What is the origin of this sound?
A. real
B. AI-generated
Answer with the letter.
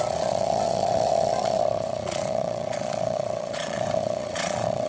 B